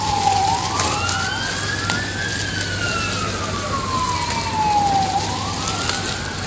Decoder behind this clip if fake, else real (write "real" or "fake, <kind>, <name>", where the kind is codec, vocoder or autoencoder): real